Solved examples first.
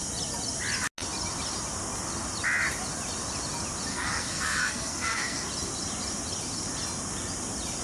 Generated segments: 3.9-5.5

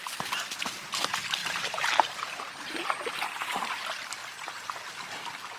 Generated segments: 1.4-3.7

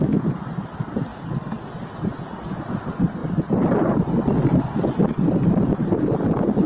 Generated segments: none

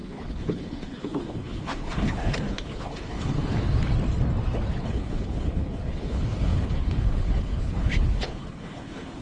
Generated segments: 0.0-3.6; 4.8-9.2

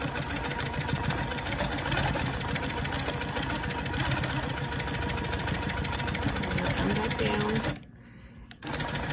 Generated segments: none

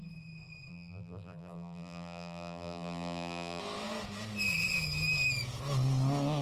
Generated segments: 0.7-3.6